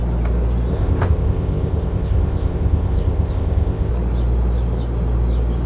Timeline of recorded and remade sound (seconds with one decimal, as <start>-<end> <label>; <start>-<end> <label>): 0.0-0.7 recorded; 0.7-3.9 remade; 3.9-5.7 recorded

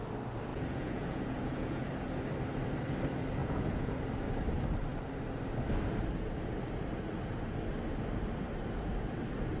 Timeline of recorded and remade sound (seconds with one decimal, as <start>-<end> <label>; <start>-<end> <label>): 0.0-0.5 recorded; 0.5-1.9 remade; 1.9-3.4 recorded; 3.4-4.0 remade; 4.0-9.6 recorded

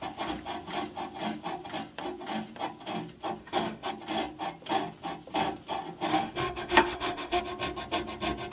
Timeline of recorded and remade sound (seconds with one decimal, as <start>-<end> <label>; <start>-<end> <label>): 0.0-3.4 recorded; 3.4-3.9 remade; 3.9-6.1 recorded; 6.1-7.4 remade; 7.4-8.5 recorded

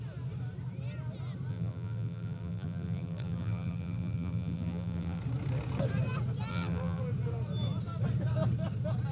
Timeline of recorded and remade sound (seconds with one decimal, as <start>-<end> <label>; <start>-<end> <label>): 0.0-1.5 recorded; 1.5-5.2 remade; 5.2-6.5 recorded; 6.5-7.0 remade; 7.0-9.1 recorded